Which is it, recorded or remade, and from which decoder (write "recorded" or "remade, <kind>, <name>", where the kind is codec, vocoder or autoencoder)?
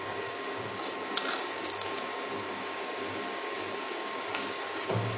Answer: remade, codec, DAC